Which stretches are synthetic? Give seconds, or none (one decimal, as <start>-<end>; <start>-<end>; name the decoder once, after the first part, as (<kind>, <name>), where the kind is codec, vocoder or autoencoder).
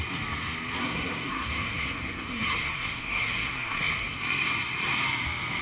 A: 0.8-4.2 (codec, SNAC)